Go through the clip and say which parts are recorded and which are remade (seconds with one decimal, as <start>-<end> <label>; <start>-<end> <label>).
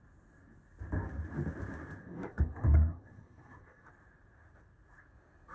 0.0-2.0 recorded; 2.0-3.9 remade; 3.9-5.5 recorded